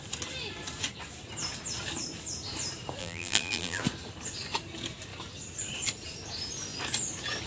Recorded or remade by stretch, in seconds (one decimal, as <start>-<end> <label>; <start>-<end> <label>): 0.0-3.0 recorded; 3.0-3.8 remade; 3.8-7.5 recorded